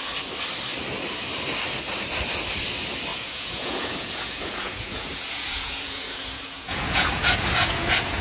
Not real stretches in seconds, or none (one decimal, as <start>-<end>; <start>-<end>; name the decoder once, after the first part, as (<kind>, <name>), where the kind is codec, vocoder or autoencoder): 3.1-8.2 (vocoder, Vocos)